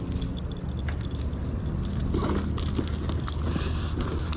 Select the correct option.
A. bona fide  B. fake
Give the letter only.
A